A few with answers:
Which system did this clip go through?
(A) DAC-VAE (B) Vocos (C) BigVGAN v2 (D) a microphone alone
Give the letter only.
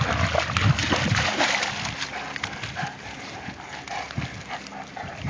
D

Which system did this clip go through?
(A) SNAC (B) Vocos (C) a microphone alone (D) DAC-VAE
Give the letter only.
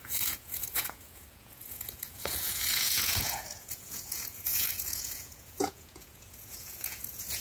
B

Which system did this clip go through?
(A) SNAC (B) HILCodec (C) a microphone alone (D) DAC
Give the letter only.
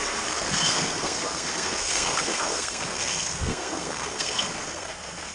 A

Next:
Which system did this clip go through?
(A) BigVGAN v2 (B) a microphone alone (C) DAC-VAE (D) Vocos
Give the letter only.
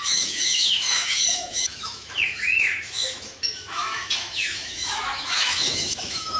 C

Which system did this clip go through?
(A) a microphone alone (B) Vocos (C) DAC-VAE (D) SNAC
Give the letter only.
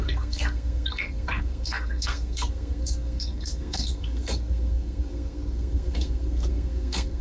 D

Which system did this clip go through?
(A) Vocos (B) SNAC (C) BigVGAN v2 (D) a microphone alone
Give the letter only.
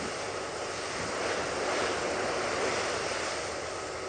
D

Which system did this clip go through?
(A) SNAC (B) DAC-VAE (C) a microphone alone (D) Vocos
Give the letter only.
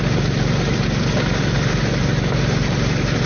C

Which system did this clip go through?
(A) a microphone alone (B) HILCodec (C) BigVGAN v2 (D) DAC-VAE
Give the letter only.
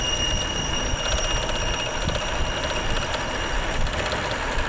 A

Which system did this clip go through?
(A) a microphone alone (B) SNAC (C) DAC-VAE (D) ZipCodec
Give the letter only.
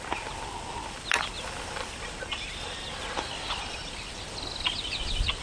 A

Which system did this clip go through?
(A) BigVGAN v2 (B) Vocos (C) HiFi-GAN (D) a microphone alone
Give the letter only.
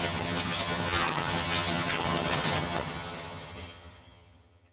C